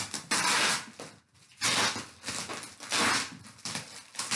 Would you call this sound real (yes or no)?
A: yes